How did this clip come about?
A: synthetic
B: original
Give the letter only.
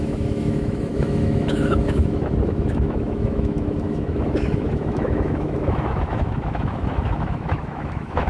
A